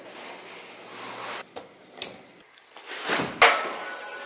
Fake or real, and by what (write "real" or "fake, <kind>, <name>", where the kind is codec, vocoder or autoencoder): real